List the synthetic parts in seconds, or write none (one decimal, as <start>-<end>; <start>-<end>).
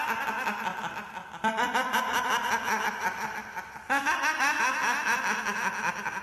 none